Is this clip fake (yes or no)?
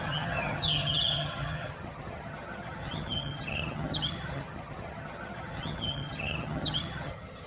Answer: yes